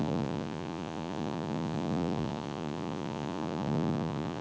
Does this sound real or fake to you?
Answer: fake